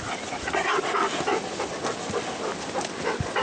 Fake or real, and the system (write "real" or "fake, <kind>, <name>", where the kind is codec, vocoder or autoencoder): real